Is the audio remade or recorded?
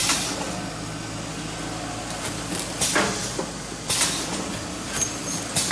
recorded